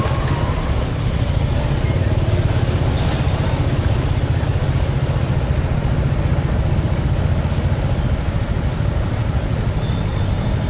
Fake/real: real